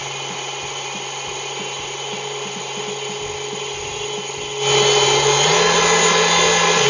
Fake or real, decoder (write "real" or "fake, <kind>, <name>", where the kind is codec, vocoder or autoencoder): real